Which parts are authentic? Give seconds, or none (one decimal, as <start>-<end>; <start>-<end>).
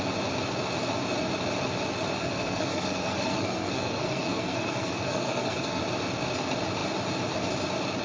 0.0-2.2; 5.8-8.0